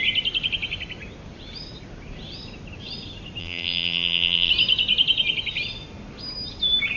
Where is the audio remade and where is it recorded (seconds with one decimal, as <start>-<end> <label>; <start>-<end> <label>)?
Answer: 0.0-3.4 recorded; 3.4-4.5 remade; 4.5-7.0 recorded